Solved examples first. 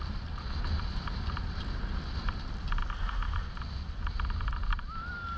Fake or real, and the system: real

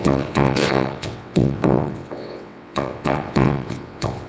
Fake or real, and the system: fake, vocoder, WaveNeXt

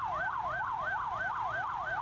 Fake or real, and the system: real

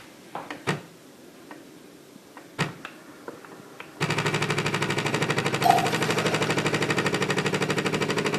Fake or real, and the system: real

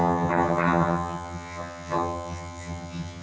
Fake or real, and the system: fake, vocoder, HiFi-GAN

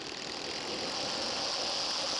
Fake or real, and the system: real